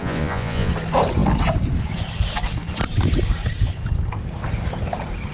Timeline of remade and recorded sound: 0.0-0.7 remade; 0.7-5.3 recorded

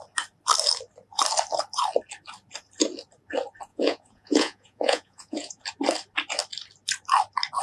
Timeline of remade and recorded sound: 0.0-3.7 recorded; 3.7-5.6 remade; 5.6-7.6 recorded

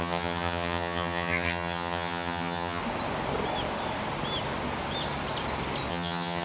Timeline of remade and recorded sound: 0.0-2.8 remade; 2.8-5.9 recorded; 5.9-6.4 remade

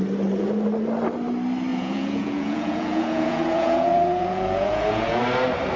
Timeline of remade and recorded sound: 0.0-1.7 recorded; 1.7-5.2 remade; 5.2-5.8 recorded

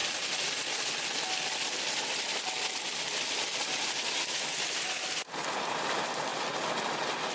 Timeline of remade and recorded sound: 0.0-7.3 recorded

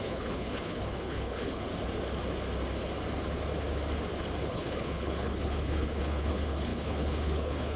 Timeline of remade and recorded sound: 0.0-1.7 remade; 1.7-4.4 recorded; 4.4-7.8 remade

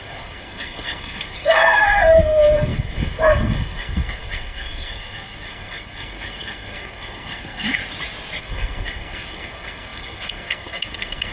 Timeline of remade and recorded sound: 0.0-7.8 remade; 7.8-8.4 recorded; 8.4-11.3 remade

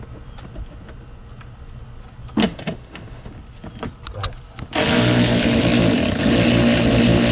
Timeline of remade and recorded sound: 0.0-2.4 recorded; 2.4-3.3 remade; 3.3-7.3 recorded